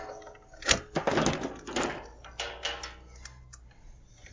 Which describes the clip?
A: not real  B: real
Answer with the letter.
B